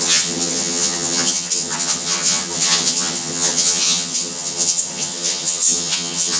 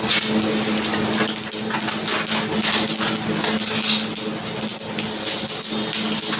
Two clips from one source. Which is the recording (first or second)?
second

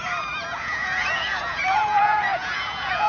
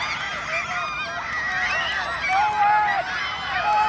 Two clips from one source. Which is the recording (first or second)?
second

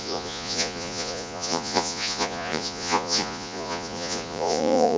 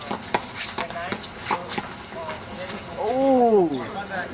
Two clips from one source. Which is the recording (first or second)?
second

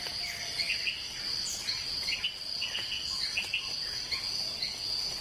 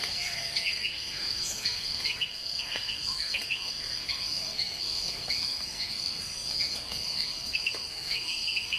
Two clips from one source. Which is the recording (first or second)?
first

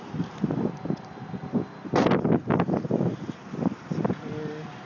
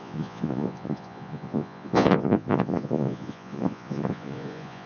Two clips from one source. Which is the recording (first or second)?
first